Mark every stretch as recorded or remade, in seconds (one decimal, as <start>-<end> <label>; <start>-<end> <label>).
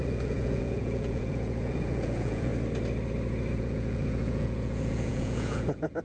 0.0-2.5 remade; 2.5-3.6 recorded; 3.6-6.0 remade